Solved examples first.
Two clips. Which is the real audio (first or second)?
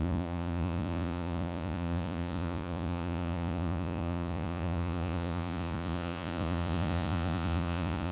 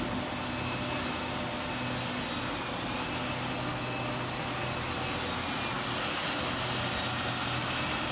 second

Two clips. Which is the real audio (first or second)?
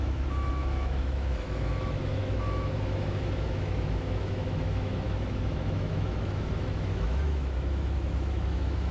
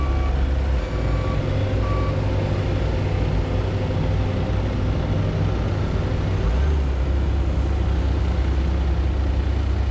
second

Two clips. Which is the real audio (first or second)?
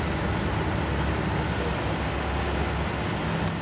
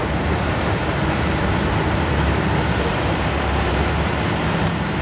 first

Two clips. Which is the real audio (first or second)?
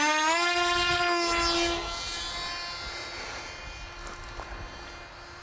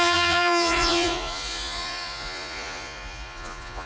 first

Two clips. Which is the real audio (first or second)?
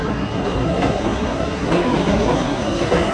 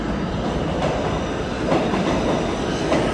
second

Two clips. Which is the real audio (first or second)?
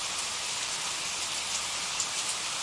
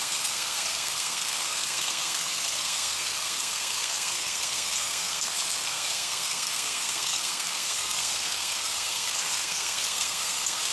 first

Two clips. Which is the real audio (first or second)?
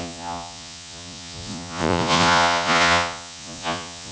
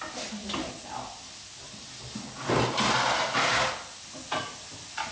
second